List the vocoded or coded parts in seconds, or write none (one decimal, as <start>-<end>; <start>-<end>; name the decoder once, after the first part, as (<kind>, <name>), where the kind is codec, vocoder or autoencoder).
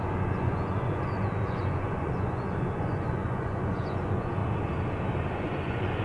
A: 0.0-4.4 (vocoder, Vocos); 5.4-6.0